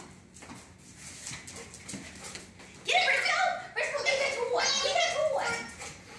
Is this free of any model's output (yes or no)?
yes